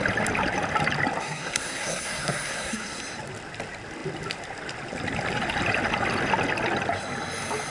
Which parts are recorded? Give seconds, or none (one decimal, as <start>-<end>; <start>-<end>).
0.0-1.2; 3.0-7.7